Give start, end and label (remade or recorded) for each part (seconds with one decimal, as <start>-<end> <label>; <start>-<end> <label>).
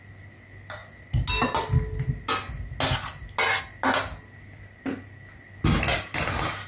0.0-6.7 recorded